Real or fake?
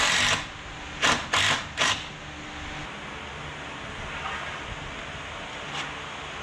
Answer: real